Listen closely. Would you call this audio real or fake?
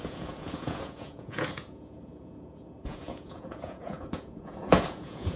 fake